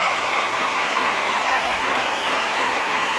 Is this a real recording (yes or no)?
no